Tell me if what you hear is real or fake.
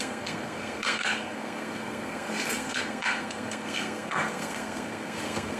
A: fake